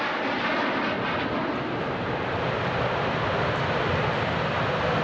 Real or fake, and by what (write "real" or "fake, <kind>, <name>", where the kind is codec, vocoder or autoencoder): real